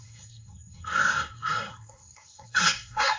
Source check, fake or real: fake